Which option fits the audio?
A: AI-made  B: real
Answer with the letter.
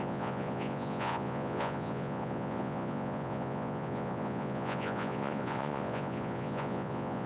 A